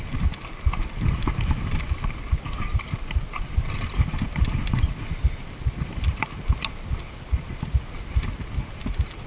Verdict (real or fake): real